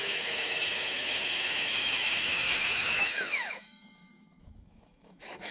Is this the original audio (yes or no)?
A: no